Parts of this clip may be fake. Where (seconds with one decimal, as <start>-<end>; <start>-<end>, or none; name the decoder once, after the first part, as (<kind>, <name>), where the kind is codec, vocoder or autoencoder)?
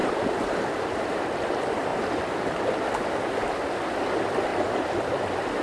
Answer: 0.0-1.2 (vocoder, BigVGAN v2); 1.9-2.9; 4.5-5.0